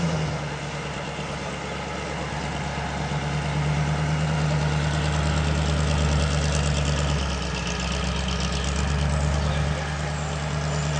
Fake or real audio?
real